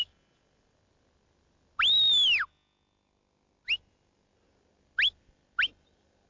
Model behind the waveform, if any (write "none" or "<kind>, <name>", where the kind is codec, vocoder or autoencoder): none